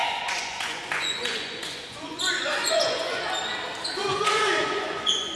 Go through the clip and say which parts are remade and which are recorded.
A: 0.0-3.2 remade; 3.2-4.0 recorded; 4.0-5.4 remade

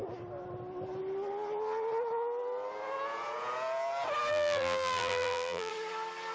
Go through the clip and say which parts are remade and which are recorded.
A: 0.0-4.3 recorded; 4.3-5.7 remade; 5.7-6.3 recorded

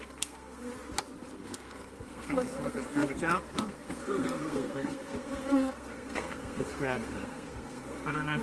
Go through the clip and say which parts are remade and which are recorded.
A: 0.0-0.7 remade; 0.7-1.3 recorded; 1.3-8.4 remade

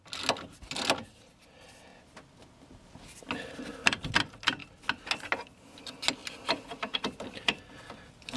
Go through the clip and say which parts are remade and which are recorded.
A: 0.0-8.4 recorded

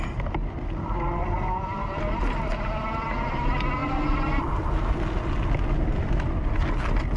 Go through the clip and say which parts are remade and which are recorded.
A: 0.0-3.8 recorded; 3.8-4.4 remade; 4.4-7.2 recorded

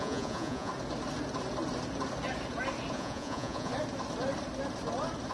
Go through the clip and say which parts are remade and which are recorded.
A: 0.0-0.7 remade; 0.7-2.9 recorded; 2.9-3.7 remade; 3.7-5.3 recorded